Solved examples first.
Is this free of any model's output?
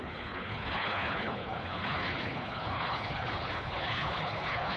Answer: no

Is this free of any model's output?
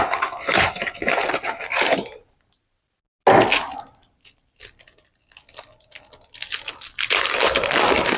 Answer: yes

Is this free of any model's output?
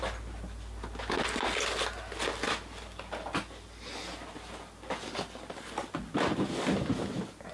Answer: yes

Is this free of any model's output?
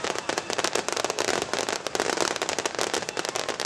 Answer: yes